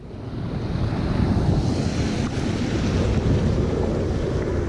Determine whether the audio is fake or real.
real